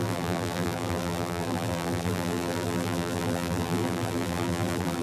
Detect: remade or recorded remade